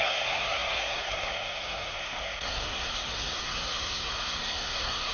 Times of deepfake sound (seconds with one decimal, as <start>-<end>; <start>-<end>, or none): 0.0-5.1